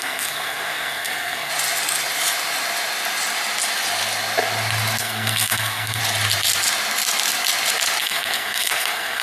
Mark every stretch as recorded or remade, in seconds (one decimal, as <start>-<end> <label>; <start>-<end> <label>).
0.0-1.5 remade; 1.5-5.0 recorded; 5.0-6.0 remade; 6.0-8.0 recorded; 8.0-9.2 remade